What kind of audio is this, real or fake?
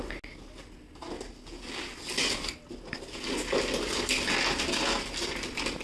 real